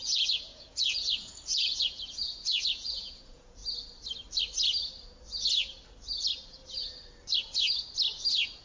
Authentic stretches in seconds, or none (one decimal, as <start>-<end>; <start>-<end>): 3.6-8.6